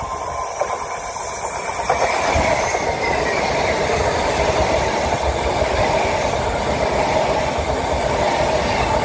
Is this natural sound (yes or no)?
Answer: yes